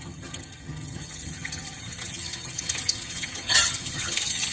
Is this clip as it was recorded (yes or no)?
no